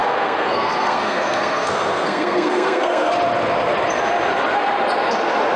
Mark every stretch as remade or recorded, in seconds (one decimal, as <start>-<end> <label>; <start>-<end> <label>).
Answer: 0.0-3.1 remade; 3.1-5.6 recorded